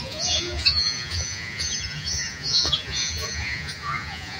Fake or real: fake